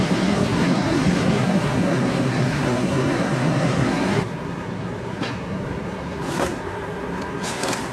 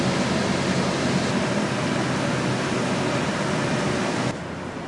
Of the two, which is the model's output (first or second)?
first